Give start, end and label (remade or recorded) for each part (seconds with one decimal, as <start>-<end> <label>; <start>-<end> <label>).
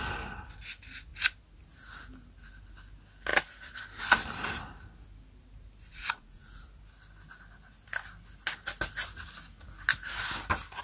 0.0-5.9 recorded; 5.9-6.6 remade; 6.6-10.8 recorded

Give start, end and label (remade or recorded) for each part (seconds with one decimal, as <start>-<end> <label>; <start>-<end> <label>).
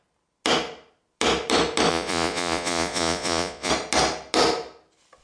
0.0-1.9 recorded; 1.9-3.7 remade; 3.7-5.2 recorded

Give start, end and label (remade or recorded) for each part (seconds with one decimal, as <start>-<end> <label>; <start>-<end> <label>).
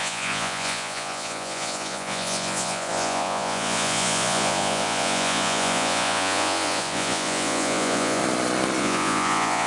0.0-8.2 remade; 8.2-8.8 recorded; 8.8-9.7 remade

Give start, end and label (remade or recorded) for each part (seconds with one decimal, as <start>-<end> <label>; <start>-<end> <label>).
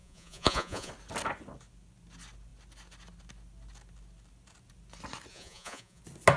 0.0-0.9 remade; 0.9-5.3 recorded; 5.3-6.0 remade; 6.0-6.4 recorded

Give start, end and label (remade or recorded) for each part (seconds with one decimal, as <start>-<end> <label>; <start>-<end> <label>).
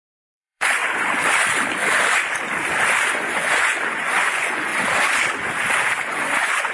0.0-0.8 remade; 0.8-3.1 recorded; 3.1-4.7 remade; 4.7-6.1 recorded; 6.1-6.7 remade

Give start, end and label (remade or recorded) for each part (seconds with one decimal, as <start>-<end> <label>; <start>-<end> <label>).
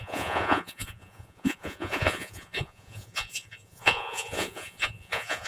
0.0-5.5 remade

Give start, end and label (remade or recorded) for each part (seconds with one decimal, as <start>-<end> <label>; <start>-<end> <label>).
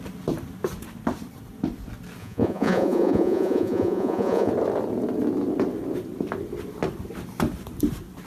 0.0-2.2 recorded; 2.2-4.5 remade; 4.5-8.3 recorded